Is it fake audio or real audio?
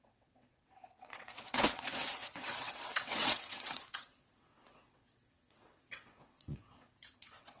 fake